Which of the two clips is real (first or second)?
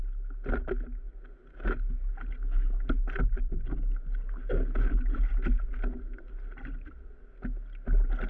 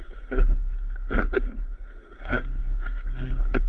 first